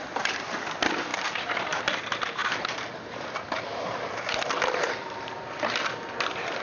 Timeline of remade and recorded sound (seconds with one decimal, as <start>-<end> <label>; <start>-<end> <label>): 0.0-1.1 recorded; 1.1-1.8 remade; 1.8-2.4 recorded; 2.4-5.6 remade; 5.6-6.6 recorded